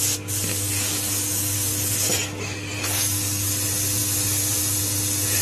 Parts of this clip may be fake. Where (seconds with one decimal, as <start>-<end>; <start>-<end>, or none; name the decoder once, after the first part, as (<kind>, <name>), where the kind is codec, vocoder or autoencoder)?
0.5-3.5 (codec, DAC)